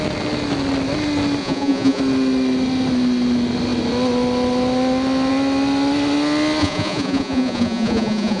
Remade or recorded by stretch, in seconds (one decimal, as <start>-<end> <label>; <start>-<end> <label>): 0.0-1.4 recorded; 1.4-2.0 remade; 2.0-6.6 recorded; 6.6-8.4 remade